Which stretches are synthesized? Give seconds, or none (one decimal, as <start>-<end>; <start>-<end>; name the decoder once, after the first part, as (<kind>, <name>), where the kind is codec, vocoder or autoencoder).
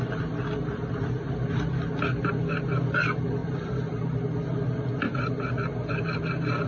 none